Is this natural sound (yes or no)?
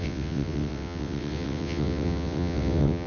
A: no